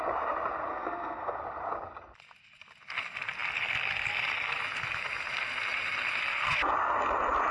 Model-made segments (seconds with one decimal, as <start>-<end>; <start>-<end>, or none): 0.7-1.4

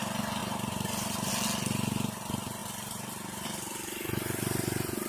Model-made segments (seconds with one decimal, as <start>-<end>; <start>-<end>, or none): 0.4-1.3; 2.6-5.1

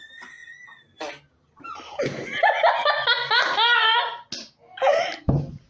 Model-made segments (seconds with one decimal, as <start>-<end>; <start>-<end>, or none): none